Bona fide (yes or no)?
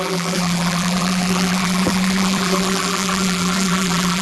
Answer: no